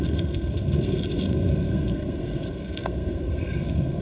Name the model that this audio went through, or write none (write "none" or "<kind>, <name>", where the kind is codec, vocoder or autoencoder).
codec, SNAC